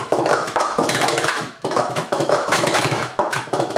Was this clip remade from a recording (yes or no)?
yes